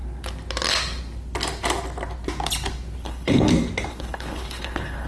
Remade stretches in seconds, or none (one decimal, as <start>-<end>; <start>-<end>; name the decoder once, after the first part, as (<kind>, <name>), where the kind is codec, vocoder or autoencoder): 3.0-3.5 (codec, HILCodec); 3.9-5.1